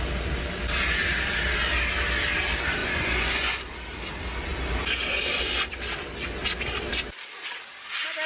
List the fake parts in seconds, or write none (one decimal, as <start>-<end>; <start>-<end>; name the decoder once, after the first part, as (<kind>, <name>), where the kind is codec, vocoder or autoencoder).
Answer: 2.8-3.5 (vocoder, Vocos)